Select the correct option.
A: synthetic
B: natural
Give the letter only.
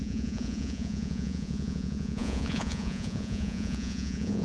A